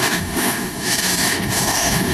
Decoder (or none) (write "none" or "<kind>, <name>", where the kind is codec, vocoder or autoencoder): codec, DAC